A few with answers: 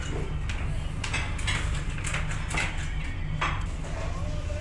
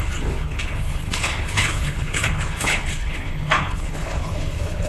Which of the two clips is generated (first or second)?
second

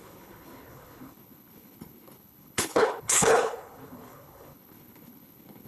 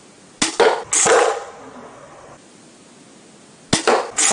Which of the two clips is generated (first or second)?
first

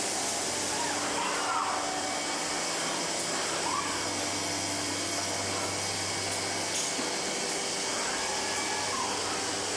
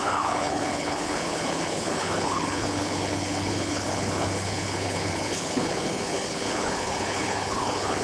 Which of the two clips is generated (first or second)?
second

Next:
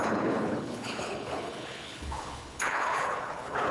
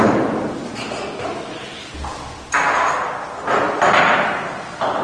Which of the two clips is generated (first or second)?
first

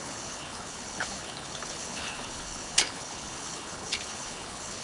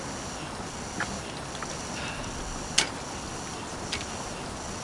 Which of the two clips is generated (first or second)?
first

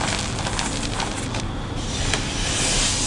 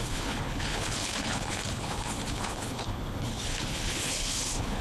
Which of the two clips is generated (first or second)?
second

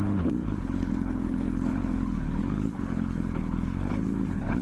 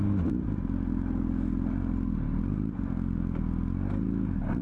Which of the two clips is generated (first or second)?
first